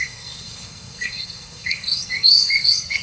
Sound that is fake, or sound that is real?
fake